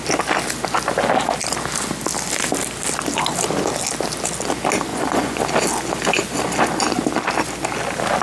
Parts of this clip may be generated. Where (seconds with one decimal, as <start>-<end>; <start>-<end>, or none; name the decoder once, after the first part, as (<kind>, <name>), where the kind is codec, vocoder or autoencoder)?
4.9-5.4 (vocoder, Vocos)